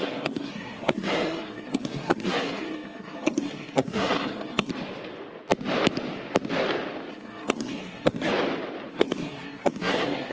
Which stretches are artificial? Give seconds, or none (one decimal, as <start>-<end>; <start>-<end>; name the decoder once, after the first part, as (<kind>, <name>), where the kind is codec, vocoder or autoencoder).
0.0-4.7 (codec, SNAC); 7.1-8.3; 8.9-10.3